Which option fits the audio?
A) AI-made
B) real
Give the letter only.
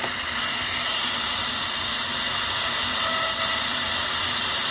B